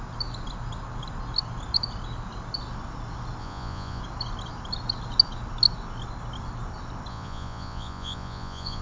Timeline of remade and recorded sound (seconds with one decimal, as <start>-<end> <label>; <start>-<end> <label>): 0.0-3.4 recorded; 3.4-4.0 remade; 4.0-7.1 recorded; 7.1-8.8 remade